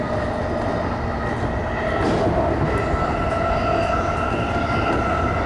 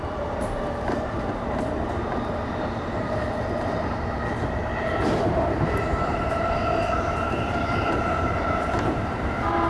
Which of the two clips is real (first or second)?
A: first